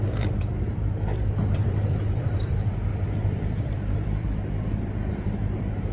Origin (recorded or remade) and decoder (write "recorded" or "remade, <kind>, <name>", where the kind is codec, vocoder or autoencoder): remade, vocoder, BigVGAN v2